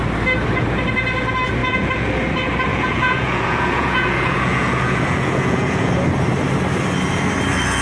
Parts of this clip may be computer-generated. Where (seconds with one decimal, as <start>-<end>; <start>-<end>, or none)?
1.6-2.1; 2.7-5.9